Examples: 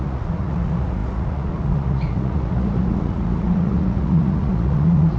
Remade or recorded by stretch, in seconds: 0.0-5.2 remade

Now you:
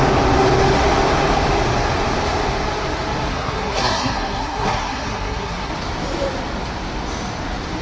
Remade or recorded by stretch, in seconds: 0.0-3.3 recorded; 3.3-5.7 remade; 5.7-7.8 recorded

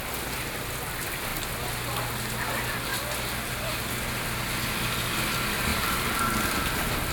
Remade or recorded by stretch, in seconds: 0.0-7.1 recorded

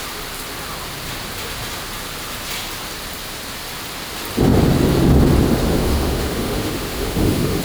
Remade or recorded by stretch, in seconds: 0.0-5.7 recorded; 5.7-7.6 remade